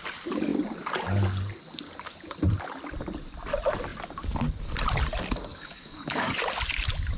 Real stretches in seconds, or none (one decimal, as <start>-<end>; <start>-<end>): 0.0-5.5; 6.4-7.2